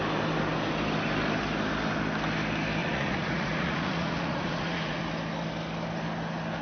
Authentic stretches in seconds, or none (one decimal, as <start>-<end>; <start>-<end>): 0.0-2.8; 5.0-6.6